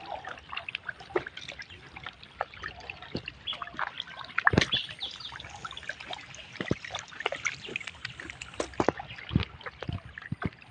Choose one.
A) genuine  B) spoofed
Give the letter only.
A